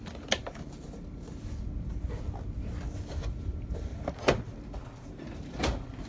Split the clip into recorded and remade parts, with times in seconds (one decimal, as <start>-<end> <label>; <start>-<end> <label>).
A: 0.0-6.1 recorded